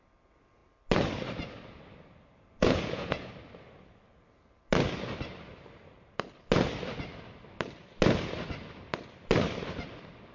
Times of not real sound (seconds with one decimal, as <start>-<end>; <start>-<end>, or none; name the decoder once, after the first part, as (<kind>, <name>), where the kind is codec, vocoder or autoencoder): 2.6-3.3 (vocoder, Vocos)